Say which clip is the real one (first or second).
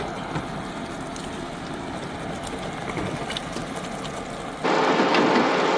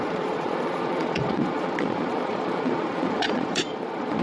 first